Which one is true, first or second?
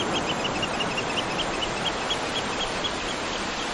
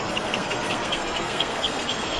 first